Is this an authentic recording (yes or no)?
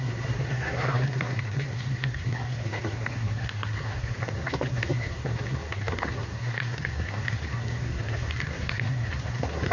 no